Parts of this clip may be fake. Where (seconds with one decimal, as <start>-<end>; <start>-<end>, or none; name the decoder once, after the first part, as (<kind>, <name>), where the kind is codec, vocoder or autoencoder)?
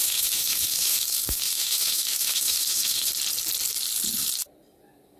0.0-3.1 (autoencoder, DAC-VAE)